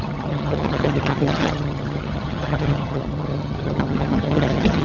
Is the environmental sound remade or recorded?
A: remade